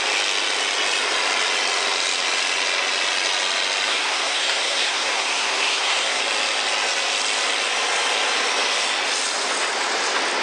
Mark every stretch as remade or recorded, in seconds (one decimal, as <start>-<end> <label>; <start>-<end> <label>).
0.0-3.9 recorded; 3.9-6.2 remade; 6.2-10.4 recorded